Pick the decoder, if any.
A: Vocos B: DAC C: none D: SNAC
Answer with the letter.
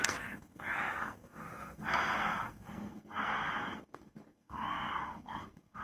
D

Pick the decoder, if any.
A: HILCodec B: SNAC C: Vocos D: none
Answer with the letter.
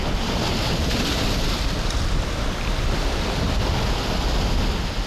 D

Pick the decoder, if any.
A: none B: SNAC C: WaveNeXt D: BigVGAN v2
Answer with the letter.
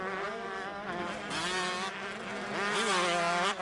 A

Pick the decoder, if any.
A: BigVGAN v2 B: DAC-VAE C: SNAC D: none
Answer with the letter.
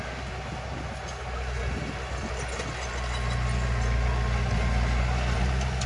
D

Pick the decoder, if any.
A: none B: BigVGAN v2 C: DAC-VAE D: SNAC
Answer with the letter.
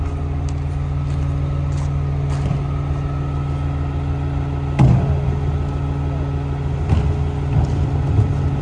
A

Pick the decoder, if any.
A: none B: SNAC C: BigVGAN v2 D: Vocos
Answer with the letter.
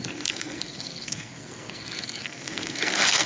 B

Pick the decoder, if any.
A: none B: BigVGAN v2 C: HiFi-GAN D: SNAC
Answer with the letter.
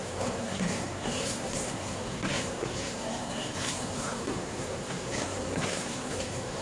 D